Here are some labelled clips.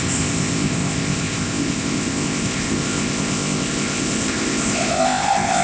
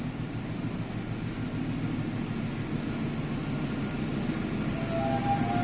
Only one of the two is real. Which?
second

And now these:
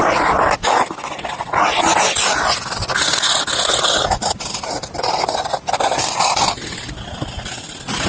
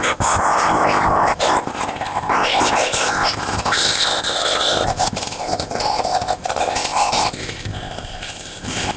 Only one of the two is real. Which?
first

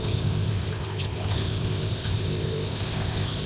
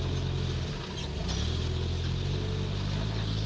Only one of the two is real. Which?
second